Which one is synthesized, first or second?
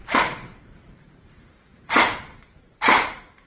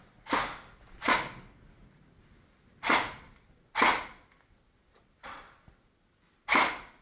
first